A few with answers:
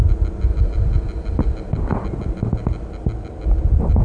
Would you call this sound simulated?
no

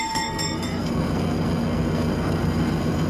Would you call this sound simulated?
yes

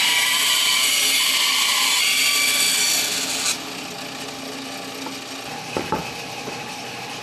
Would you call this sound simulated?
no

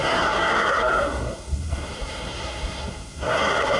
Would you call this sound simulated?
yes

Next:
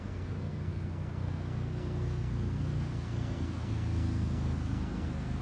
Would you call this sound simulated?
yes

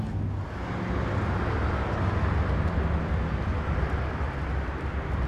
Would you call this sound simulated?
no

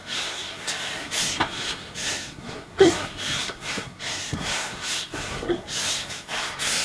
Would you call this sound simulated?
yes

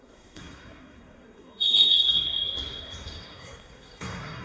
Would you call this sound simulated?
yes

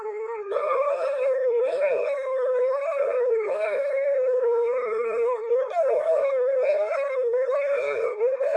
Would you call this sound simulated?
yes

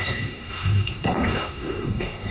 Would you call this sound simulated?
yes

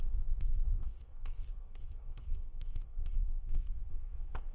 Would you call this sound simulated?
yes